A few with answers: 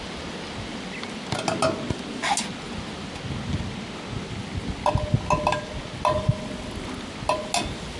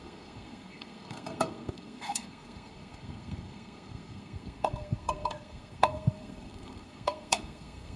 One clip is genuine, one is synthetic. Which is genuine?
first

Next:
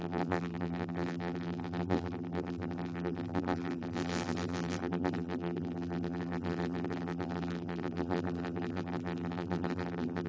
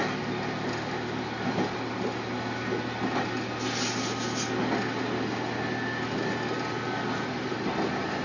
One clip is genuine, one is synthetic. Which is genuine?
second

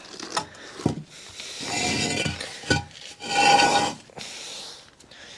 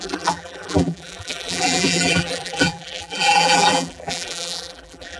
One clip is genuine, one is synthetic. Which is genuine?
first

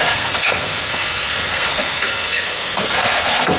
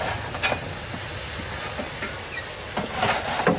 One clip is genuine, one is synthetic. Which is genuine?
second